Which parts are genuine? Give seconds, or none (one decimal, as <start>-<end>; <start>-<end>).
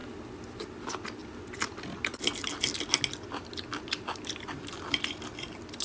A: 0.0-5.8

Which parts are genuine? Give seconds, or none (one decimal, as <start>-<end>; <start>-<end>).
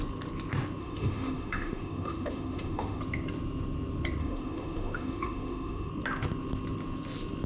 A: 0.0-0.8; 3.0-4.2; 5.9-7.5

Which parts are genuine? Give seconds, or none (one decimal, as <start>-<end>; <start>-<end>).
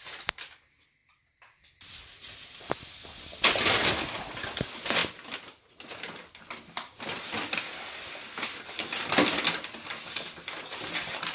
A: 0.0-11.3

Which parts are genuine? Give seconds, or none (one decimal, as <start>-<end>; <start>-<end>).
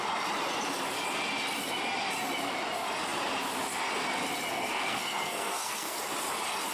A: 0.0-4.5; 6.0-6.7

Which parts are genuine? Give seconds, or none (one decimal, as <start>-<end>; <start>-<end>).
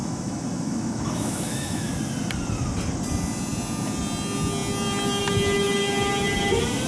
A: 1.9-6.9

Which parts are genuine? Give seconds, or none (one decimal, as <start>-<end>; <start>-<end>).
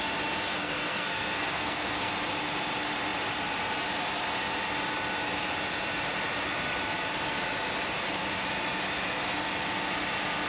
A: 0.0-0.5; 2.1-10.5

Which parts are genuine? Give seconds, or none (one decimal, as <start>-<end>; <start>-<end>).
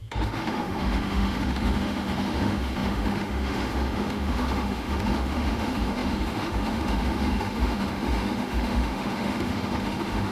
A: none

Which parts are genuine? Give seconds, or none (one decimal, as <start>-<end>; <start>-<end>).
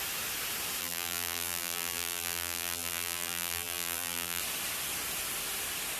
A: 0.0-0.8; 4.4-6.0